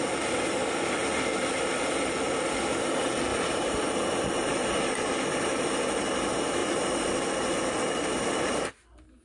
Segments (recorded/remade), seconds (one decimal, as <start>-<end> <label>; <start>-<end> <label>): 0.0-3.3 recorded; 3.3-3.9 remade; 3.9-6.6 recorded; 6.6-7.2 remade; 7.2-9.2 recorded